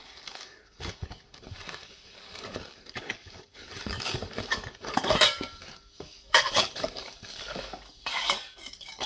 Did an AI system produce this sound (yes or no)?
yes